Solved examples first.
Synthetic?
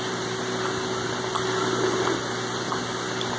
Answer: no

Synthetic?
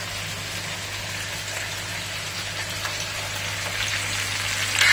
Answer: no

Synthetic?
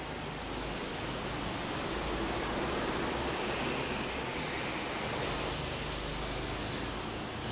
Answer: no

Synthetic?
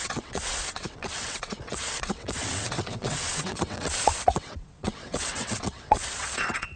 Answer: yes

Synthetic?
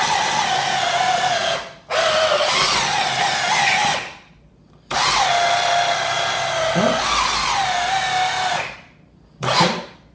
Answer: no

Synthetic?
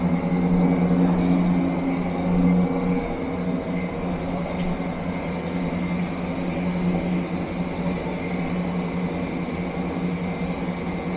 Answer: no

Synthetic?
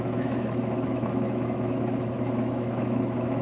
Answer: yes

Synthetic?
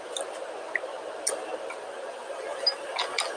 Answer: no